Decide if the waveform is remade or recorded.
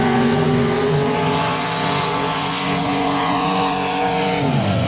remade